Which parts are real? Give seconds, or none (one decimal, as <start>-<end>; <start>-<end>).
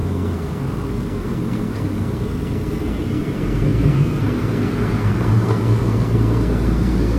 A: none